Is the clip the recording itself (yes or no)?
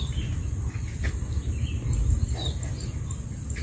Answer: yes